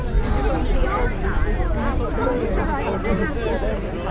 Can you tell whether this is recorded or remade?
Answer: recorded